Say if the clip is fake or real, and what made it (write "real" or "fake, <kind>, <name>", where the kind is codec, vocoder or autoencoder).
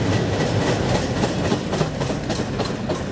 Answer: real